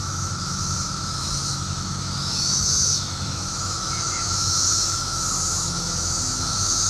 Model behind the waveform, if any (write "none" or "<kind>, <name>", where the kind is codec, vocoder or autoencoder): autoencoder, DAC-VAE